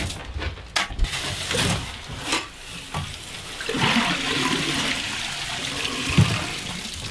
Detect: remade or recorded recorded